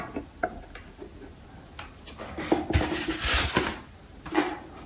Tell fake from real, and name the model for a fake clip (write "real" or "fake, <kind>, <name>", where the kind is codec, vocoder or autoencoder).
real